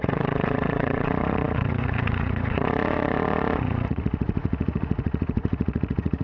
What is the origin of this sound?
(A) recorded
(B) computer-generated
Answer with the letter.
B